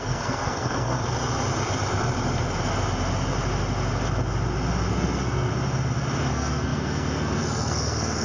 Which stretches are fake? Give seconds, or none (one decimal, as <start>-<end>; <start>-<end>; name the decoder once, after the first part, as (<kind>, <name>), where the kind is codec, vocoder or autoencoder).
0.0-1.0 (codec, SNAC); 4.9-5.5; 6.3-8.2